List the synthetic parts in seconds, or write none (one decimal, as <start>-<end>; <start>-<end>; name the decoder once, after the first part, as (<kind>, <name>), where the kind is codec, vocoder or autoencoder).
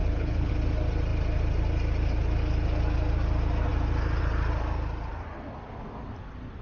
0.0-0.5 (codec, HILCodec)